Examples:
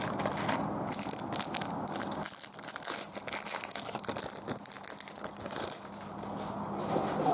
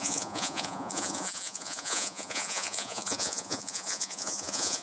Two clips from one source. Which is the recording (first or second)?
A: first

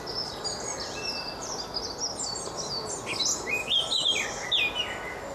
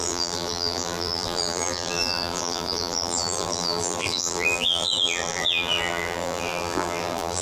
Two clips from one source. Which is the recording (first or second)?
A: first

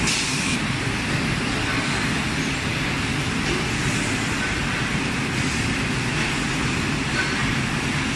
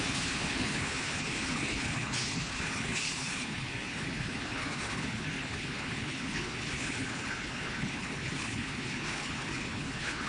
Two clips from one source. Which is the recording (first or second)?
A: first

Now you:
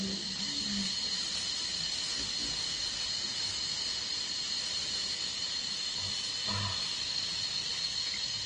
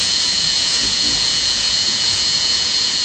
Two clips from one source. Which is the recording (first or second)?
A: first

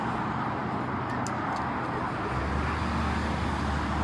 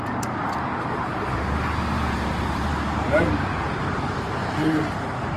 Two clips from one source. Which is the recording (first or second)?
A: first